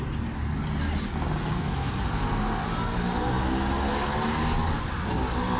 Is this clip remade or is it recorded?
recorded